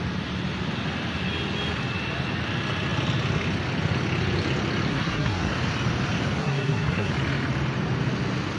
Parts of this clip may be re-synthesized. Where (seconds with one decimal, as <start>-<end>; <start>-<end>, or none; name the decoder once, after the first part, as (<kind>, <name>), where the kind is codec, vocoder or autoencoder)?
4.9-5.5 (codec, SNAC); 6.4-7.1

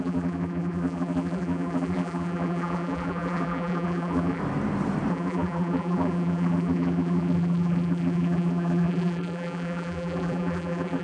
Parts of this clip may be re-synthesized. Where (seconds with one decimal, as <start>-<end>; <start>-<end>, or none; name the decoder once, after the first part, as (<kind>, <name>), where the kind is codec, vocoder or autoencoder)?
0.0-4.4 (vocoder, BigVGAN v2); 5.1-11.0